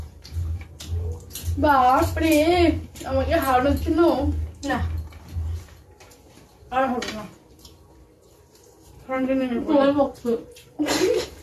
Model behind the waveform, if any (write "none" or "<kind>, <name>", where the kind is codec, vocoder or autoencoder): vocoder, BigVGAN v2